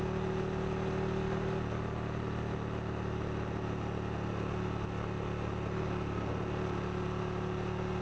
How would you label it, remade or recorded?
recorded